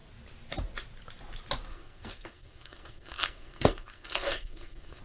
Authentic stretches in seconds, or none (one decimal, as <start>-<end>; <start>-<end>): 0.0-1.7